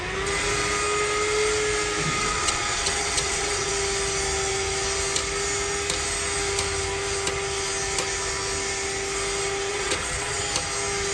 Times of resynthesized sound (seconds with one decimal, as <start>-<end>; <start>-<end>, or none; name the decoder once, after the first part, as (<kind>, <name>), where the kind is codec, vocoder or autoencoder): 2.2-3.7 (vocoder, WaveNeXt); 9.7-10.4